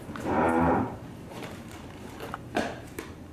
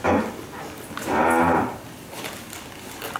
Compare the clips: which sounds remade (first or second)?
first